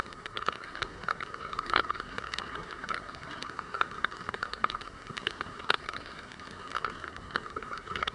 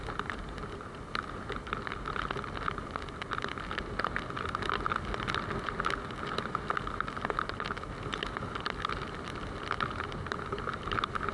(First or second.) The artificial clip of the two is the first